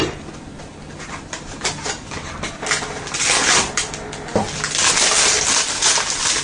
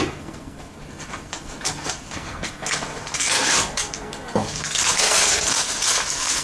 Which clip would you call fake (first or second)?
second